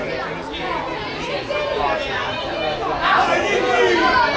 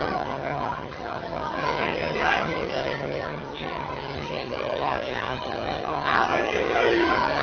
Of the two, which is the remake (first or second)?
second